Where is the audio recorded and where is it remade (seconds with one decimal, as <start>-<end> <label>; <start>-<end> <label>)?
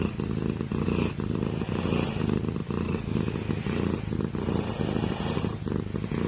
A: 0.0-6.3 recorded